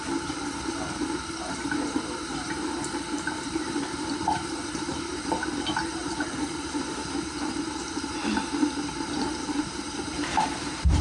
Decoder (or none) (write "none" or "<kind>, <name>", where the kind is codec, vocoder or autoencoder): vocoder, BigVGAN v2